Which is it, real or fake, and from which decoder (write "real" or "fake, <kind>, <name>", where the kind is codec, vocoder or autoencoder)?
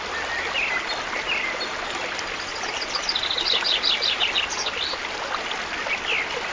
real